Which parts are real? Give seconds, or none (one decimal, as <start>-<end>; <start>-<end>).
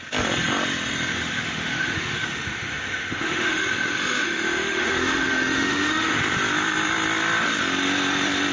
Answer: 0.0-1.1; 6.2-8.5